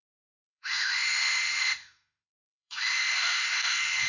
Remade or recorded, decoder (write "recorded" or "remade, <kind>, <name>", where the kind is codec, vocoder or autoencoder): remade, autoencoder, DAC-VAE